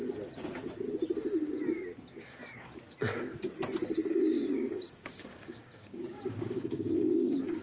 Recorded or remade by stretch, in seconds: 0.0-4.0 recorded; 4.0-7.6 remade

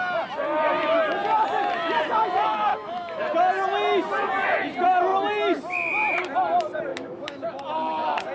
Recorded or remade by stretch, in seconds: 0.0-2.7 recorded; 2.7-3.2 remade; 3.2-6.9 recorded; 6.9-7.6 remade; 7.6-8.3 recorded

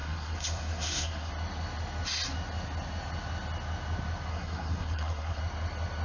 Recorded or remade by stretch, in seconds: 0.0-1.3 remade; 1.3-4.3 recorded; 4.3-5.4 remade; 5.4-6.0 recorded

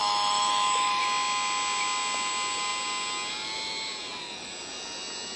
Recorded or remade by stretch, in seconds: 0.0-1.0 remade; 1.0-5.4 recorded

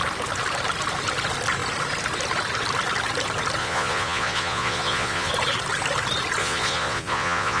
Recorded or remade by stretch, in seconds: 0.0-3.6 recorded; 3.6-5.3 remade; 5.3-6.4 recorded; 6.4-7.6 remade

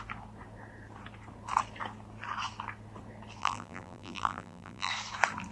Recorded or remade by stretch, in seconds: 0.0-3.4 recorded; 3.4-4.9 remade; 4.9-5.5 recorded